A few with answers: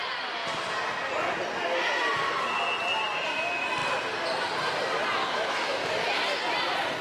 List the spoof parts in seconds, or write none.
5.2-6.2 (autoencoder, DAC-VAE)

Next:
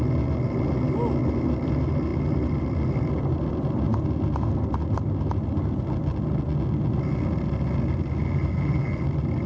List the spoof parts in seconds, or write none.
1.2-1.7 (vocoder, BigVGAN v2); 2.1-5.2

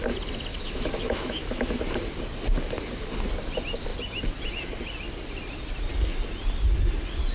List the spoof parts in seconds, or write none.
0.5-1.8 (autoencoder, DAC-VAE)

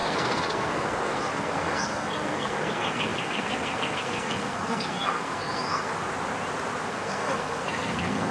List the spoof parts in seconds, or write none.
0.0-5.9 (codec, SNAC); 6.9-8.3